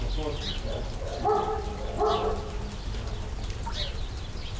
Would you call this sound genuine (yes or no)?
yes